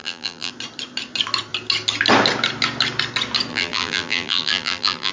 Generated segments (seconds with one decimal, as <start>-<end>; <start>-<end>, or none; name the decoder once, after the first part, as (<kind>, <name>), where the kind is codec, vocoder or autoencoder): 0.0-0.5 (vocoder, BigVGAN v2); 3.5-5.1